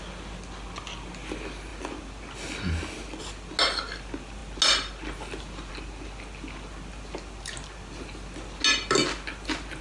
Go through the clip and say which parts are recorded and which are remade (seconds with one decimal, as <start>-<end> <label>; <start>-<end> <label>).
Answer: 0.0-9.8 recorded